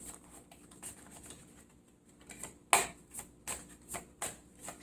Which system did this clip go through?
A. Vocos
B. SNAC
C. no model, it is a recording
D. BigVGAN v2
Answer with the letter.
C